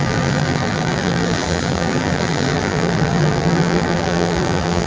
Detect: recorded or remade remade